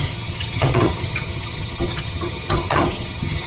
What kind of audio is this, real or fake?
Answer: fake